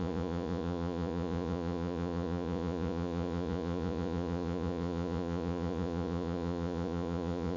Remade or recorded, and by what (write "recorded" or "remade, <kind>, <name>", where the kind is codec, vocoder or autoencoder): remade, vocoder, Vocos